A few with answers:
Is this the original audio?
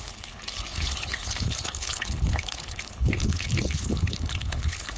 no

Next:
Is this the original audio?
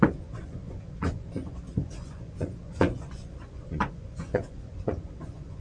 no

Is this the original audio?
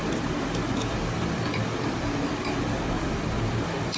no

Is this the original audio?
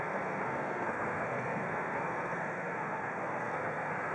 no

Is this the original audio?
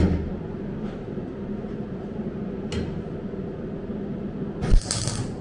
yes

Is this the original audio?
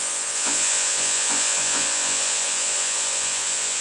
no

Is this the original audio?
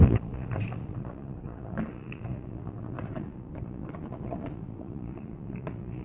no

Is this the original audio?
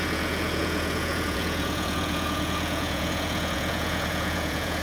no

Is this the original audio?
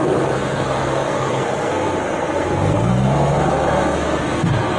no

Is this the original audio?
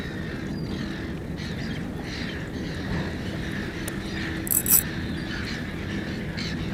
yes